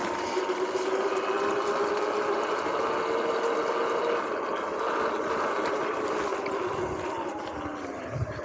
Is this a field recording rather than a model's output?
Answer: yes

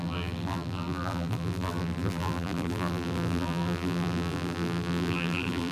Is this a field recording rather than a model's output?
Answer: no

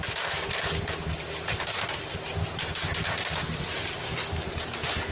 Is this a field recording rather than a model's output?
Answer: no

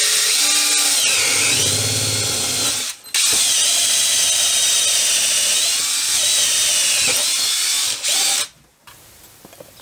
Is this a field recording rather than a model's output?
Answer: yes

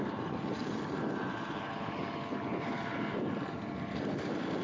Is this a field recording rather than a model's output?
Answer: no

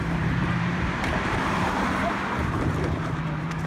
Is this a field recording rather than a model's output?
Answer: no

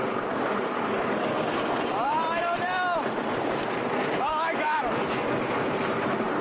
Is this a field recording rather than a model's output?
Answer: no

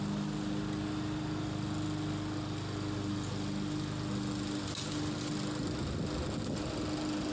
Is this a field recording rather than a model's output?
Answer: yes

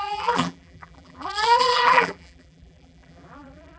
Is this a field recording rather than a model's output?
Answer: no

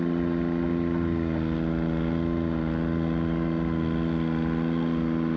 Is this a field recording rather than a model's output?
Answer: yes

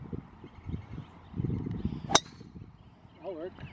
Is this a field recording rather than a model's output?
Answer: yes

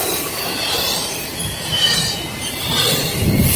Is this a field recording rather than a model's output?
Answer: no